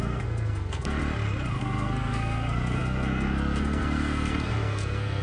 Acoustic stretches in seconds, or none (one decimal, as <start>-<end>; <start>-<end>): 1.0-1.6